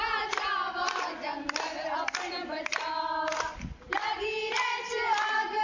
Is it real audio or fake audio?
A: real